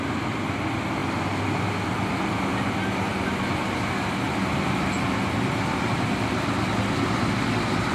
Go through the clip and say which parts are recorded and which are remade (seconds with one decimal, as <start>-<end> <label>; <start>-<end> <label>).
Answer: 0.0-7.9 recorded

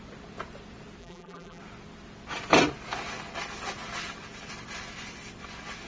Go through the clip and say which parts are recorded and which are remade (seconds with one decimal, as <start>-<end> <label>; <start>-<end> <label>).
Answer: 0.0-1.0 recorded; 1.0-1.6 remade; 1.6-5.9 recorded